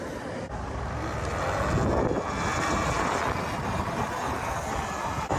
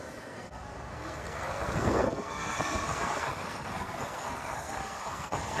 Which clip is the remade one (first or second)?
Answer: second